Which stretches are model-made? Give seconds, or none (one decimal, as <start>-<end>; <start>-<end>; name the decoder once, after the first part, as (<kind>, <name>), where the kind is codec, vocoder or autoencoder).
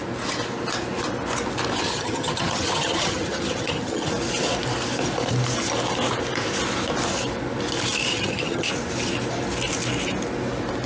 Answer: 1.8-4.1 (vocoder, HiFi-GAN); 8.1-8.7